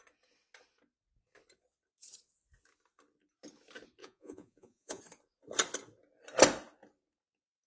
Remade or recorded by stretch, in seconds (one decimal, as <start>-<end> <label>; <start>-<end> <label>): 0.0-4.0 recorded; 4.0-5.0 remade; 5.0-7.7 recorded